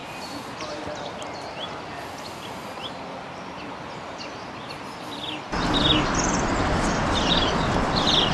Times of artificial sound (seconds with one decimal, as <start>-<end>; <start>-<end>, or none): none